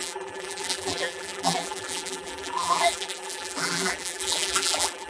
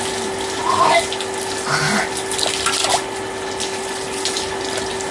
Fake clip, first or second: first